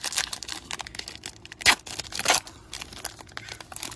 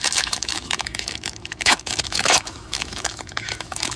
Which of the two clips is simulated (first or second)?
second